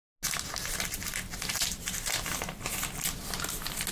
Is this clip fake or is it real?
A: real